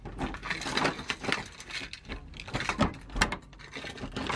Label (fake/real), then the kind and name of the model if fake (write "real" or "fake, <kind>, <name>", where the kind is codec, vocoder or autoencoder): real